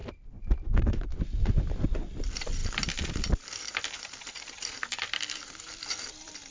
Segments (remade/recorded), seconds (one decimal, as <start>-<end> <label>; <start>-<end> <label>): 0.0-0.7 recorded; 0.7-1.1 remade; 1.1-2.2 recorded; 2.2-6.5 remade